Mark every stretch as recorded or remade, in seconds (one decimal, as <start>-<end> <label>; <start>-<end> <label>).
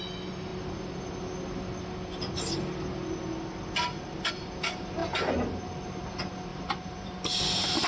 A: 0.0-6.5 recorded; 6.5-7.1 remade; 7.1-7.9 recorded